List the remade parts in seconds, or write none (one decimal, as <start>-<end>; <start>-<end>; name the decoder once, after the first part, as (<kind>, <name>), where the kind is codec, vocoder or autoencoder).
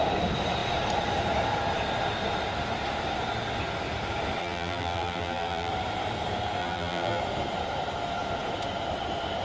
4.4-5.7 (vocoder, BigVGAN v2); 6.6-7.2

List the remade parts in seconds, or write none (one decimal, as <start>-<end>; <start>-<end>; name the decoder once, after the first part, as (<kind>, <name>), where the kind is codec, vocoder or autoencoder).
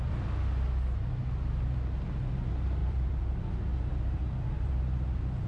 2.8-3.3 (vocoder, BigVGAN v2); 3.7-4.7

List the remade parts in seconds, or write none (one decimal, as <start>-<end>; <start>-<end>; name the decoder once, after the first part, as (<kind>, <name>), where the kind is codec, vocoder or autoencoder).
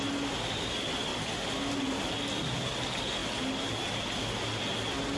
none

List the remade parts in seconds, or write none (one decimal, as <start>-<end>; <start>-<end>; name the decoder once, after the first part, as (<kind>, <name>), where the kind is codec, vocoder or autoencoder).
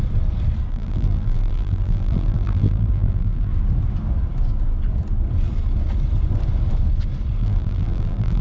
0.7-3.5 (vocoder, BigVGAN v2); 7.4-8.4